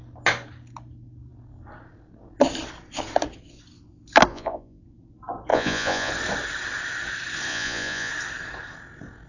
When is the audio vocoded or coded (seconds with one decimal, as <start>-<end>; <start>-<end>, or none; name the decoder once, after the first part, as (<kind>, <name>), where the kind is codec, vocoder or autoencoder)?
4.3-4.8 (vocoder, Vocos); 5.5-6.1; 7.5-8.1